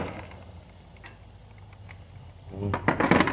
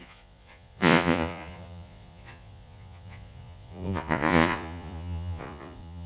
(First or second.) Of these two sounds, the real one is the first